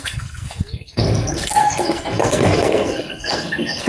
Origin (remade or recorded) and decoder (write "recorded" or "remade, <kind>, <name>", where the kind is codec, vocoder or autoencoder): remade, codec, SNAC